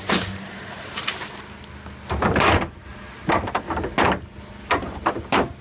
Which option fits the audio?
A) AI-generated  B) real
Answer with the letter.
B